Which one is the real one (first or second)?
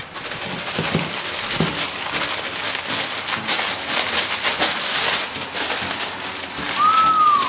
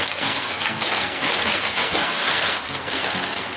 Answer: first